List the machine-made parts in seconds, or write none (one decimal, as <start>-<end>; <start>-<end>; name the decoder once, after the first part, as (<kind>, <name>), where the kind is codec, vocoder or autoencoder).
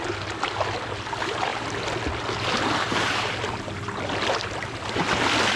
none